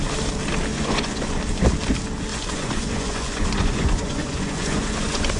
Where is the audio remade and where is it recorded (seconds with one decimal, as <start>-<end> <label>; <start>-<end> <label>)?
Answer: 0.0-0.7 recorded; 0.7-1.4 remade; 1.4-2.3 recorded; 2.3-5.4 remade